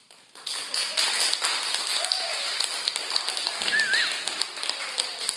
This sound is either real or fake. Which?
real